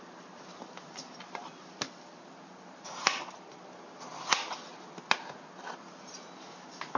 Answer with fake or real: real